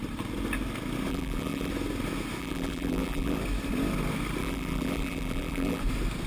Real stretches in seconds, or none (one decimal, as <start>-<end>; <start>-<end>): 0.0-1.1; 1.7-2.4; 3.4-4.4; 5.8-6.3